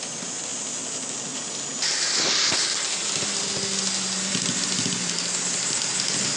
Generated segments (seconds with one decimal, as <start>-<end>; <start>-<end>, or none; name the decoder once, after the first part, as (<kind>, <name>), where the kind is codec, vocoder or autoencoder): none